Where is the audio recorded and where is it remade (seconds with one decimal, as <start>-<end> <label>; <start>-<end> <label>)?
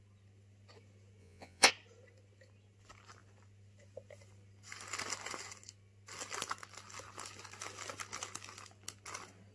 0.0-1.2 recorded; 1.2-1.7 remade; 1.7-9.5 recorded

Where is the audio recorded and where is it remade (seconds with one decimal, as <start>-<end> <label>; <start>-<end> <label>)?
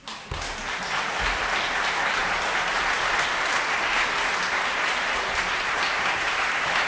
0.0-6.9 recorded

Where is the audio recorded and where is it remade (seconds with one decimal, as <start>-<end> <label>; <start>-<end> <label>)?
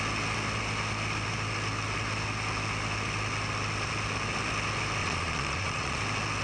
0.0-5.0 recorded; 5.0-6.0 remade; 6.0-6.4 recorded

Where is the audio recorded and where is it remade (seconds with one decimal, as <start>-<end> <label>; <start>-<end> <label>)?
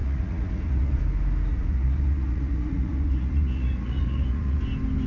0.0-1.0 remade; 1.0-1.5 recorded; 1.5-4.6 remade; 4.6-5.1 recorded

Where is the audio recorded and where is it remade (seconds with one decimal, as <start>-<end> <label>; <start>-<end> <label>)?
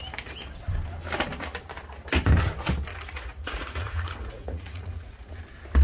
0.0-2.9 recorded; 2.9-5.3 remade; 5.3-5.8 recorded